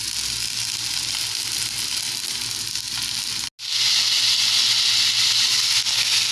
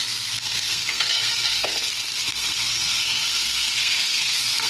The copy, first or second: second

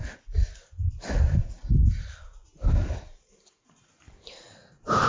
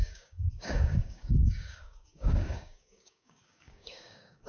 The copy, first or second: second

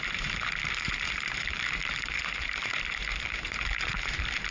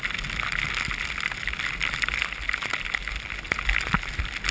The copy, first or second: first